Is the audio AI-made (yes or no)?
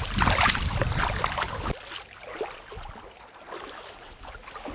no